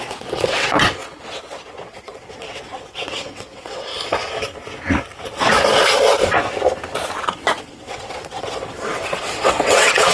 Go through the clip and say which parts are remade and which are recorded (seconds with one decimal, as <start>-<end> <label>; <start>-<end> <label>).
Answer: 0.0-3.9 remade; 3.9-7.6 recorded; 7.6-10.1 remade